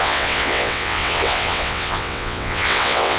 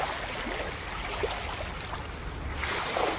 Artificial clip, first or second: first